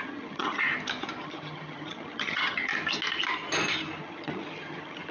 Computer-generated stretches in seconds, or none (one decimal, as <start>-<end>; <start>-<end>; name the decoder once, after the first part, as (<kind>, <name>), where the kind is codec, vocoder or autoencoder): 0.0-0.7 (vocoder, HiFi-GAN); 1.2-2.7; 4.0-5.1